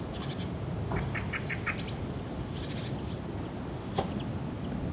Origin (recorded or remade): recorded